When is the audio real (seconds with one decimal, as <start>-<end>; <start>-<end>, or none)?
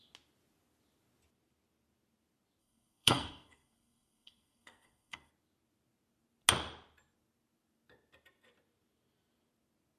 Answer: 0.0-2.6; 5.3-10.0